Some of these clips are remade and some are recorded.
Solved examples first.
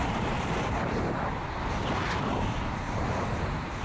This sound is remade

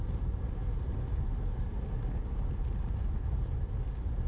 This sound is recorded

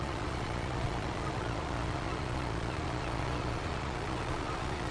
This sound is remade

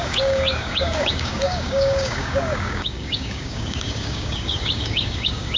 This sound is remade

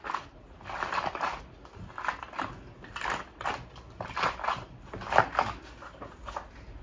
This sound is recorded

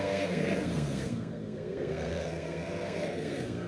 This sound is remade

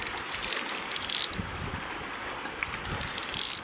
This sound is recorded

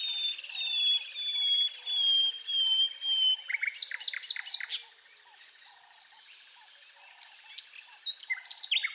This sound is recorded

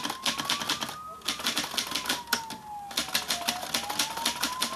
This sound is recorded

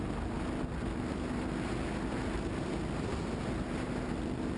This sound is recorded